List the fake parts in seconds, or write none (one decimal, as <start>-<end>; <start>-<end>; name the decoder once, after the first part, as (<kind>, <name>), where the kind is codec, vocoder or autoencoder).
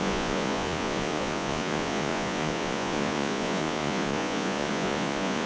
0.0-5.5 (vocoder, Vocos)